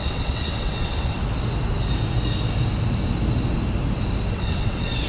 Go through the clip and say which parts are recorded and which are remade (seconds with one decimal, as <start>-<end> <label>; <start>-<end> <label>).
0.0-1.2 remade; 1.2-4.3 recorded; 4.3-5.1 remade